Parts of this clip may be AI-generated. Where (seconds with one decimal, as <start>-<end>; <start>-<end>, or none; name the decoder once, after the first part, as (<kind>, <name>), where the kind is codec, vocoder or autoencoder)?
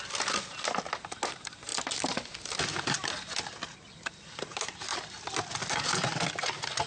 1.7-2.6 (vocoder, BigVGAN v2); 4.9-5.5